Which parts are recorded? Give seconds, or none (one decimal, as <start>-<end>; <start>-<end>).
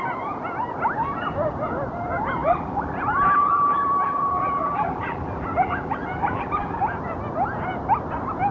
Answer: 0.0-2.4; 6.8-8.5